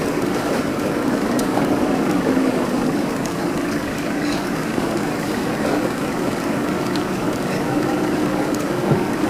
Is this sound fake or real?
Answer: fake